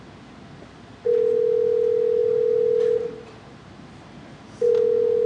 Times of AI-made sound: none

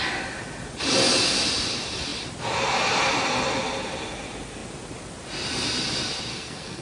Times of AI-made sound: 6.3-6.8 (codec, SNAC)